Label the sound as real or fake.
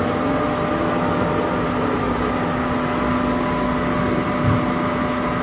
real